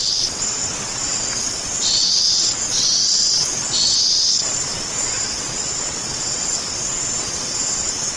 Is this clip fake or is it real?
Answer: fake